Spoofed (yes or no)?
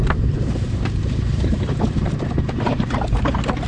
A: yes